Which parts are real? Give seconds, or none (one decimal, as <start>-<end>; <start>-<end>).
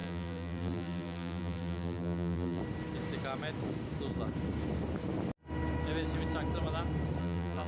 2.6-7.2